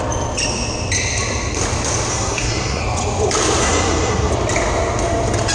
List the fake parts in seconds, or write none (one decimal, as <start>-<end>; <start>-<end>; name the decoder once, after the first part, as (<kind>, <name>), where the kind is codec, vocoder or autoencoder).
2.1-2.8 (codec, SNAC); 3.6-4.3